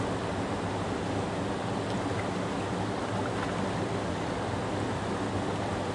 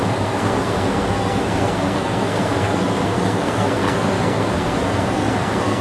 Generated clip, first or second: second